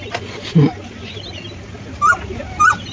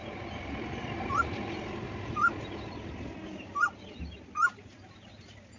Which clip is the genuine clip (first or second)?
second